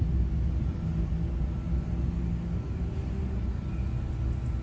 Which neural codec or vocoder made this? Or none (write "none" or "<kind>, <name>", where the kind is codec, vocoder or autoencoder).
none